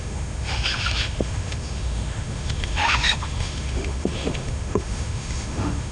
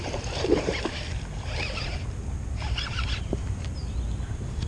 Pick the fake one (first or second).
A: first